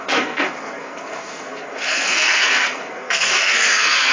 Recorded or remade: remade